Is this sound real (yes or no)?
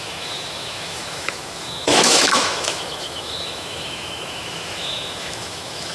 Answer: no